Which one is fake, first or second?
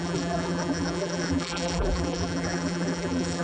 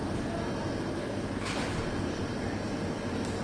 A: first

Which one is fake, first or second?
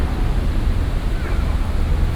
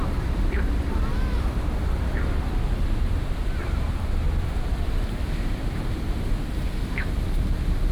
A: second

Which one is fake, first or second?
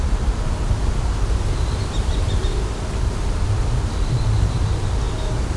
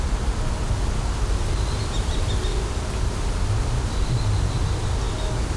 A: first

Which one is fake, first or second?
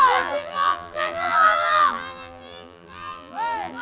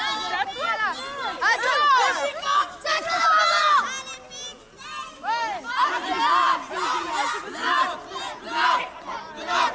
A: first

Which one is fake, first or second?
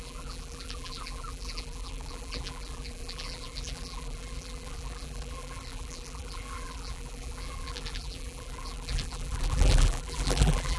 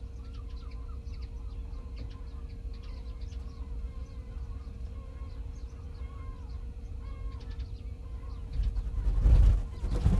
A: first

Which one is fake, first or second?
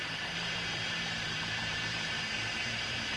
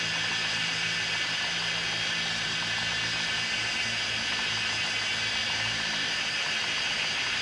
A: first